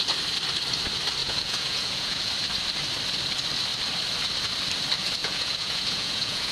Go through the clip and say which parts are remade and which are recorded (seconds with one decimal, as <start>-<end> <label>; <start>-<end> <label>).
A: 0.0-1.2 recorded; 1.2-2.3 remade; 2.3-5.2 recorded; 5.2-6.5 remade